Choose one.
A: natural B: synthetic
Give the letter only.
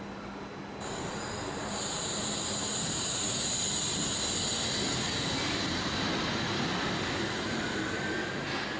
A